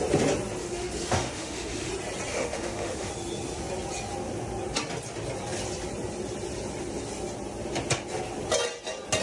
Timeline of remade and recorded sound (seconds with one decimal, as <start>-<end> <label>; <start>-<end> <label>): 0.0-0.6 recorded; 0.6-1.9 remade; 1.9-2.3 recorded; 2.3-3.1 remade; 3.1-9.2 recorded